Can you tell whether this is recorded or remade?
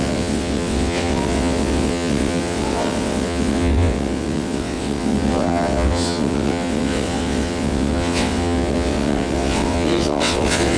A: remade